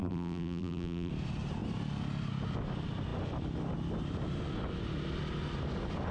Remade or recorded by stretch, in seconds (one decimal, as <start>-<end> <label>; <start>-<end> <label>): 0.0-1.1 remade; 1.1-6.1 recorded